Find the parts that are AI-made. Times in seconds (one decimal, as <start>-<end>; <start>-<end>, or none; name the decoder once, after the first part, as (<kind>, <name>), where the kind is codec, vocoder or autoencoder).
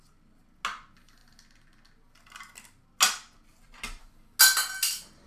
none